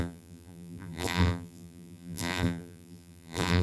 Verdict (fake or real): fake